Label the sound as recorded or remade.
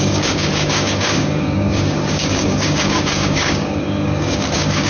remade